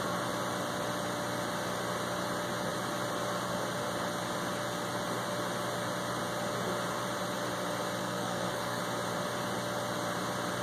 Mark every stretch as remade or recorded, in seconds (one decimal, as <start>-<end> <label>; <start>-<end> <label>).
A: 0.0-8.0 recorded; 8.0-8.8 remade; 8.8-10.6 recorded

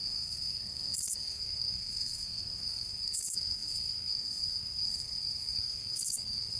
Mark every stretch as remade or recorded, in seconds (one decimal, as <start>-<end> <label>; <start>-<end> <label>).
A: 0.0-6.6 remade